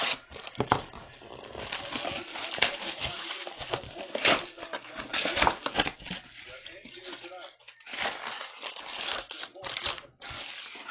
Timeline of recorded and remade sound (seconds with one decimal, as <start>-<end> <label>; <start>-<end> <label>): 0.0-2.3 recorded; 2.3-3.8 remade; 3.8-10.9 recorded